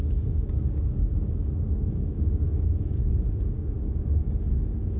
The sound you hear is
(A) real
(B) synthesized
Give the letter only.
B